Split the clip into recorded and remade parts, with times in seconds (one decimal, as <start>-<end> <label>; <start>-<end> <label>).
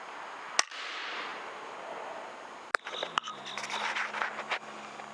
0.0-5.1 recorded